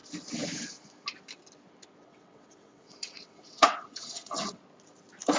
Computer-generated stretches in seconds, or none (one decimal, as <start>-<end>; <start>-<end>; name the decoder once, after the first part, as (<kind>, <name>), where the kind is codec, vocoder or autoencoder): 2.0-4.6 (vocoder, WaveNeXt)